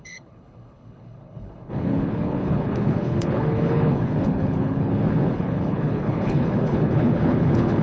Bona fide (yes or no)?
no